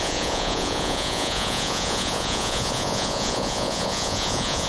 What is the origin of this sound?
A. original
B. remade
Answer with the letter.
B